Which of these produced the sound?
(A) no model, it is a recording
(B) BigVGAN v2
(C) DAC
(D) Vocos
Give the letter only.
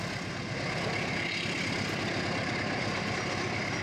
A